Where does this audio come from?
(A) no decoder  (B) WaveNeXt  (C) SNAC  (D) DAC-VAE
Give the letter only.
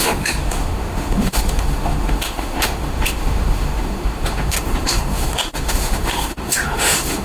D